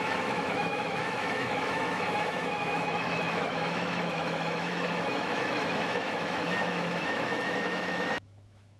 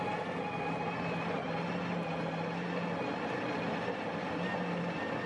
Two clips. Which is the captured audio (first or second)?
second